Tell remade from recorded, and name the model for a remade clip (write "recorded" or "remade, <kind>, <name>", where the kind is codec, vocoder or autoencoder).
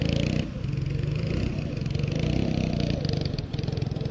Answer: recorded